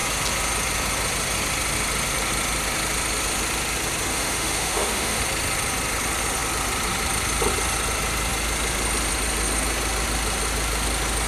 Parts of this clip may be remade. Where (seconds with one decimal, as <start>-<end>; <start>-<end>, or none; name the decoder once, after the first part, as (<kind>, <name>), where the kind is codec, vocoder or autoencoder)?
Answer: 4.1-5.2 (autoencoder, DAC-VAE)